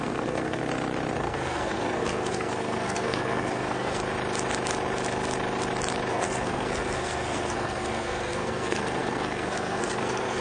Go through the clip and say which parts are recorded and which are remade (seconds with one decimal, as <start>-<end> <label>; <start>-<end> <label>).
0.0-0.6 remade; 0.6-1.2 recorded; 1.2-4.0 remade; 4.0-6.1 recorded; 6.1-10.4 remade